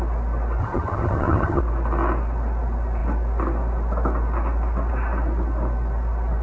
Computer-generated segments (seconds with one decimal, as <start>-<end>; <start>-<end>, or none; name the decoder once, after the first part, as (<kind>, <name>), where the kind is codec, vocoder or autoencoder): 0.6-1.6 (vocoder, HiFi-GAN)